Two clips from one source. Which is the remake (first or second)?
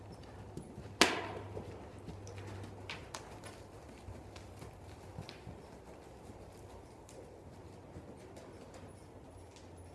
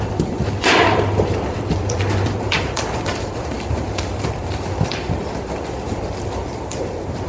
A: second